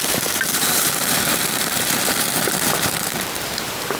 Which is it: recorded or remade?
remade